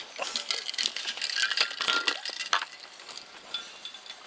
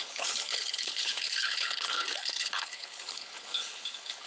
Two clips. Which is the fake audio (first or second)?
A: second